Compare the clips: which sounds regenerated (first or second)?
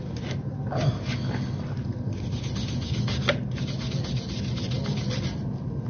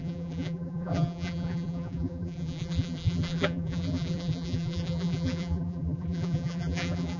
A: second